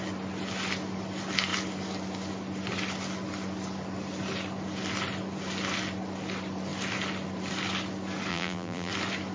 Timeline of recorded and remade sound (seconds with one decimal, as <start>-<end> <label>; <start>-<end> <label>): 0.0-8.3 recorded; 8.3-8.9 remade; 8.9-9.3 recorded